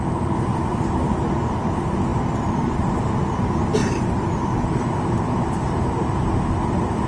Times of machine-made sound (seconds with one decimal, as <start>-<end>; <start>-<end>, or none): none